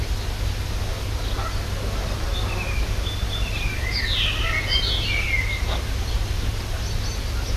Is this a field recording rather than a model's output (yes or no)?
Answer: yes